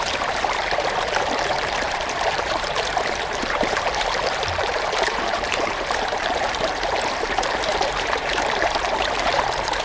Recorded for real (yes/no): no